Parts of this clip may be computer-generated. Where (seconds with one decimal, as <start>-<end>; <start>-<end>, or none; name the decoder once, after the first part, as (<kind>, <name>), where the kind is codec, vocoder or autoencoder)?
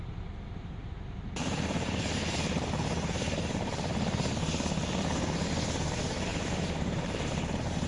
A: 0.8-3.9 (vocoder, BigVGAN v2); 6.3-7.5